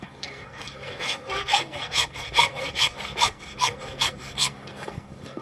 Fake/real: fake